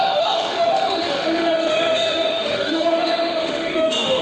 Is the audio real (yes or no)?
no